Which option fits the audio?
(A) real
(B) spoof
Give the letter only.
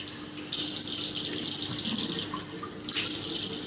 A